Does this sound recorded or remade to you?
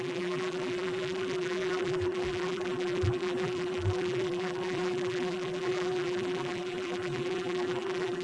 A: remade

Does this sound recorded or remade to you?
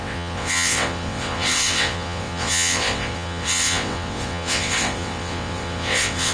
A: remade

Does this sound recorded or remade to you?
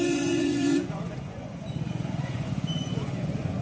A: remade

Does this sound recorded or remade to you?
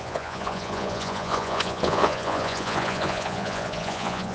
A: remade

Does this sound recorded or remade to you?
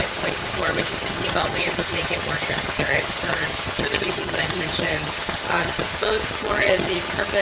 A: remade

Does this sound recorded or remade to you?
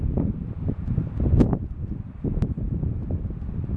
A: recorded